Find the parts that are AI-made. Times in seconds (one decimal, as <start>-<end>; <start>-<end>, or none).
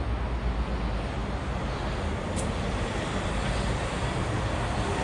1.2-4.2